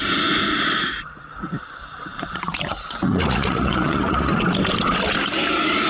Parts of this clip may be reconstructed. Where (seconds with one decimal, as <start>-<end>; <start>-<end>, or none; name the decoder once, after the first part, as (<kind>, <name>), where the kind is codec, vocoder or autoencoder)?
2.1-4.4 (vocoder, Vocos)